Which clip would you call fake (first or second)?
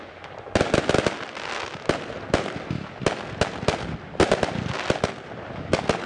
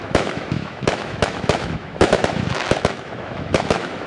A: second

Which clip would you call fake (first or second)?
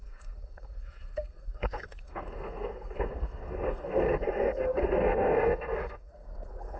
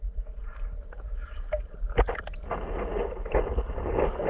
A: first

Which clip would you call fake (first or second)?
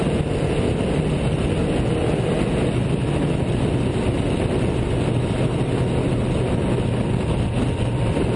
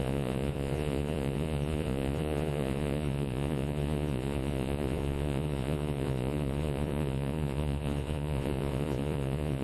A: second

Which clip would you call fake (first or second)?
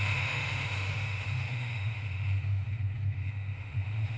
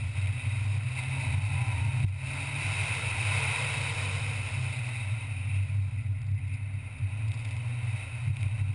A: first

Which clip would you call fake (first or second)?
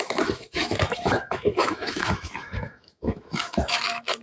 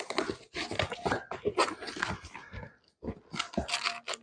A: first